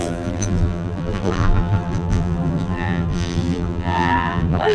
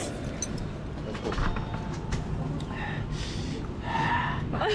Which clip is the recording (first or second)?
second